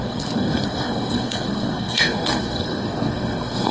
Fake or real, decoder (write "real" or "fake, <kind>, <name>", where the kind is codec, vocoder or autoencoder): fake, codec, SNAC